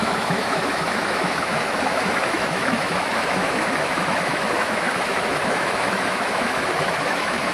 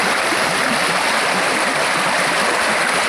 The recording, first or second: second